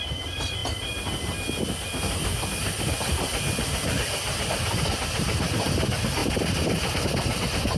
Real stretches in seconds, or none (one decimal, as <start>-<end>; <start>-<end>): 0.0-7.8